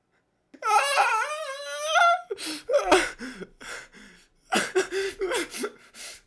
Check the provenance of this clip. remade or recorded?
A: recorded